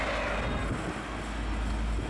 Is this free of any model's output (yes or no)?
yes